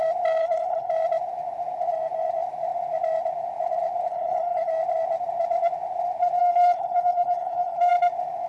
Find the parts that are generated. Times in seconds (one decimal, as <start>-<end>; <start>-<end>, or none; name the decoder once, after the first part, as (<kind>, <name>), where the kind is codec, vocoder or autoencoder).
0.4-0.9 (codec, HILCodec); 4.1-4.7; 6.4-7.9